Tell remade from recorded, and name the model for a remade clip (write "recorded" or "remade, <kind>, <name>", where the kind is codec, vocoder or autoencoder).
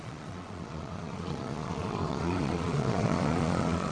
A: remade, vocoder, Vocos